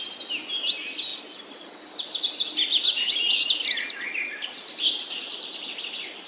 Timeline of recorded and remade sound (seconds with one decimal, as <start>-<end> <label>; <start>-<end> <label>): 0.0-6.3 recorded